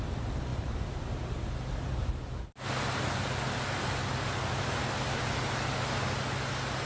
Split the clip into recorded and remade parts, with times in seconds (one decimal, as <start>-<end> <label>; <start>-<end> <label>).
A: 0.0-0.5 recorded; 0.5-1.0 remade; 1.0-4.8 recorded; 4.8-5.7 remade; 5.7-6.9 recorded